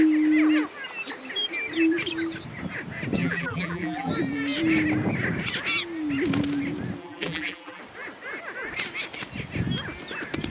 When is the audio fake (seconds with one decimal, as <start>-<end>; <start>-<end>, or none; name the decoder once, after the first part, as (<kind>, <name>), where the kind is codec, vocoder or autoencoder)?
3.2-4.1 (vocoder, BigVGAN v2); 7.0-7.8